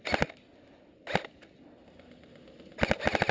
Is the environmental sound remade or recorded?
recorded